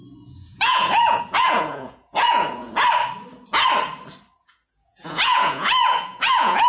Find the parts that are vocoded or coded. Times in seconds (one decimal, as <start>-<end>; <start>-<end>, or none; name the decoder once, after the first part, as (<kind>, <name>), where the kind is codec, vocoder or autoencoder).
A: 0.0-2.7 (vocoder, Vocos); 4.4-6.7